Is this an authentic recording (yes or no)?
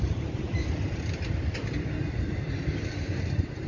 yes